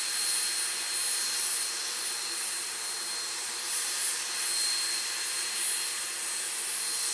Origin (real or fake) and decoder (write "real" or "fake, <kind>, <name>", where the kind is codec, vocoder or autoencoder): real